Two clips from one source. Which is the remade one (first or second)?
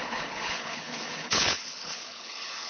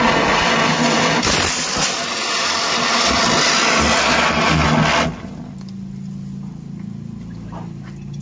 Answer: first